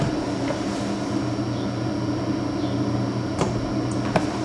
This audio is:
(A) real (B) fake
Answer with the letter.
A